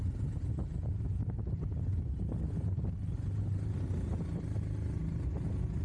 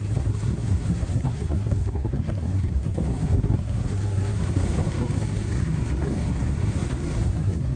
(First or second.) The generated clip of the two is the second